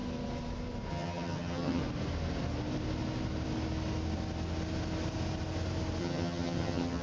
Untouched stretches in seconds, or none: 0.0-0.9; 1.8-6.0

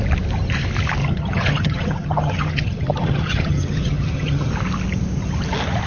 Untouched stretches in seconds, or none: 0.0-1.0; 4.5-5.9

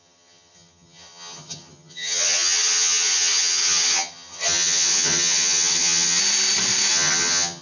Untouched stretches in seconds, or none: 6.2-6.9

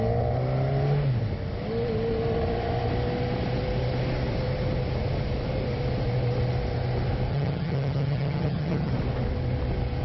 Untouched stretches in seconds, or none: 0.0-7.3; 8.9-10.0